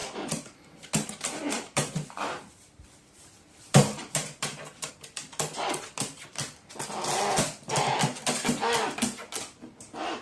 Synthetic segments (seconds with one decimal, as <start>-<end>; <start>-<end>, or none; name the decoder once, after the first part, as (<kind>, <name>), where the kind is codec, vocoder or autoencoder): 0.0-4.9 (vocoder, BigVGAN v2)